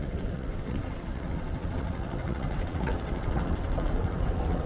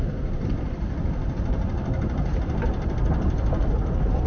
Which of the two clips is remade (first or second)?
first